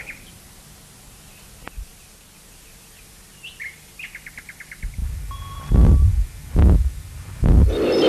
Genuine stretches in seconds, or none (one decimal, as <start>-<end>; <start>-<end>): 0.0-8.1